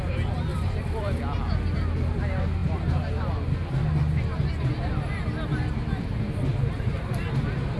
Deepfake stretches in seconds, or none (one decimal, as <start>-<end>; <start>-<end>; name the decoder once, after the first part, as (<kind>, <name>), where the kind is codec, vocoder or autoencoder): 0.5-1.2 (vocoder, BigVGAN v2); 2.6-3.2; 6.5-7.8